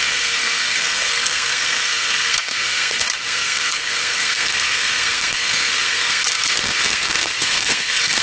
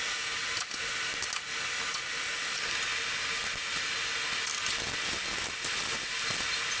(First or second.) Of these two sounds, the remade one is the first